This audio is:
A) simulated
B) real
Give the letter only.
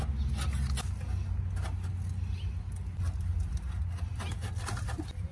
B